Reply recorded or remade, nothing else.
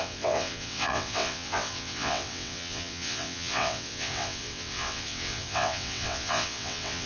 remade